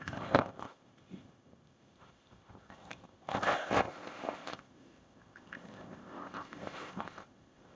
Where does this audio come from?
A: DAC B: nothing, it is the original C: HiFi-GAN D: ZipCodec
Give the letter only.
D